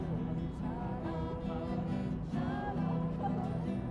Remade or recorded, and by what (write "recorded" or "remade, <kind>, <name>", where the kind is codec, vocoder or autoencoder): recorded